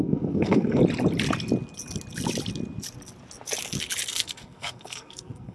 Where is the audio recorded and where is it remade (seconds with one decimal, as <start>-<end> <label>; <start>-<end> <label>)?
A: 0.0-0.8 remade; 0.8-4.1 recorded; 4.1-5.5 remade

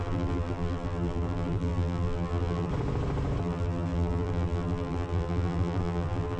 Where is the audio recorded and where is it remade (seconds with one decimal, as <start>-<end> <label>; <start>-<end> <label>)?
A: 0.0-2.7 remade; 2.7-3.4 recorded; 3.4-6.4 remade

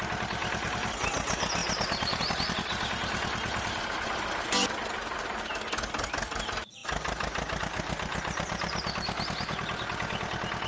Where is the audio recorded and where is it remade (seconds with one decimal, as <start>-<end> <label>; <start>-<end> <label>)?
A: 0.0-1.6 recorded; 1.6-2.2 remade; 2.2-10.7 recorded

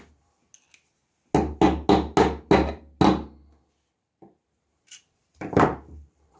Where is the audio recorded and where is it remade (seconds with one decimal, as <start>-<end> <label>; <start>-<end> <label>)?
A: 0.0-0.4 remade; 0.4-3.9 recorded; 3.9-6.4 remade

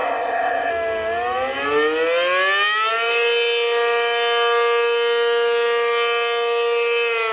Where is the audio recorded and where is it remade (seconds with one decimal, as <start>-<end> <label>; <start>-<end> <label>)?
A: 0.0-0.7 remade; 0.7-7.3 recorded